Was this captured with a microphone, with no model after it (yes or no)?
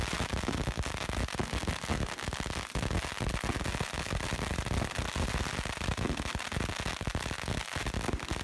yes